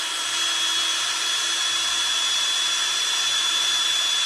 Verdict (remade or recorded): recorded